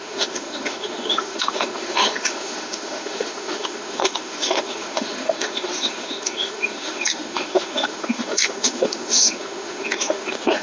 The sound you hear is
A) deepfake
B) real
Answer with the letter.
A